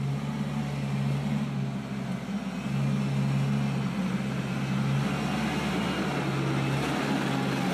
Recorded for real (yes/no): yes